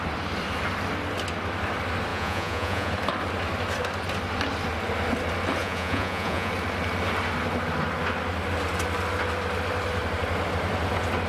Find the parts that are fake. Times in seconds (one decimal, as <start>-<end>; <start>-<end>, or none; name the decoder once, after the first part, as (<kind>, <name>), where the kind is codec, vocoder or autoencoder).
2.1-2.9 (vocoder, Vocos); 5.6-6.5